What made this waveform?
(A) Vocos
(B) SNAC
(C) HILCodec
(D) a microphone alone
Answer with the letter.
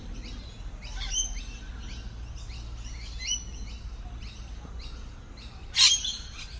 D